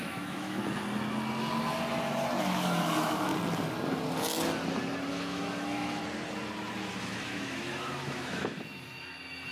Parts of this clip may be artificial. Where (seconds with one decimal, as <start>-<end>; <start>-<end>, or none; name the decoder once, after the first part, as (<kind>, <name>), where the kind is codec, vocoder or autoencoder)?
0.0-0.6 (autoencoder, DAC-VAE); 2.4-3.3; 5.1-6.0; 7.0-8.5